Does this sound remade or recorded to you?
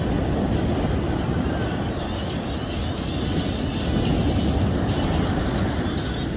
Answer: recorded